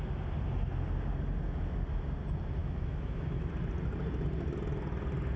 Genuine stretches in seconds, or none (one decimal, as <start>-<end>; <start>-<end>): 0.0-2.6; 3.5-5.4